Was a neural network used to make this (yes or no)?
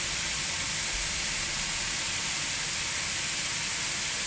no